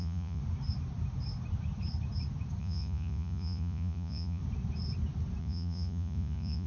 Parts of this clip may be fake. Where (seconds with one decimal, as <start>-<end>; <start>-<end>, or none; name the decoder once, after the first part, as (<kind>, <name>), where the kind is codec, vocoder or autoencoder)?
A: 0.0-0.4 (vocoder, Vocos); 2.6-4.4; 5.4-6.7